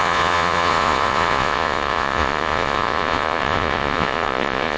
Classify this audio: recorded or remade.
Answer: remade